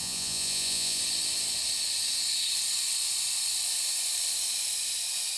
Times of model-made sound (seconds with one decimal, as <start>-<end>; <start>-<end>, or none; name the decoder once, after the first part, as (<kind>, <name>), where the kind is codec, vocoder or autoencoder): 0.0-1.0 (vocoder, Vocos)